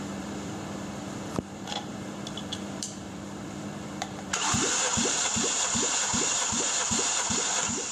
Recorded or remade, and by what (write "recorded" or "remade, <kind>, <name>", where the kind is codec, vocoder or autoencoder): remade, vocoder, BigVGAN v2